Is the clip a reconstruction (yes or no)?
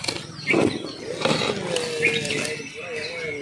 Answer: no